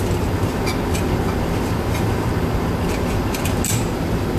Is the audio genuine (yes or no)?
no